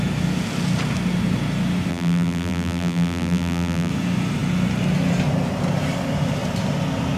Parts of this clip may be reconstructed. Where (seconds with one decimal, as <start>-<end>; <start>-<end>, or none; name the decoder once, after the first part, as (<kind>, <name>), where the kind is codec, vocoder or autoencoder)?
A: 1.9-3.9 (vocoder, BigVGAN v2)